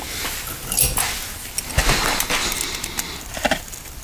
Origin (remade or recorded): recorded